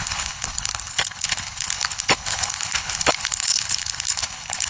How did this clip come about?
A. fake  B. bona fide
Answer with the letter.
A